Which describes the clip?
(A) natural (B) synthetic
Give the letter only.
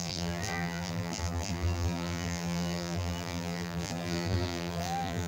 B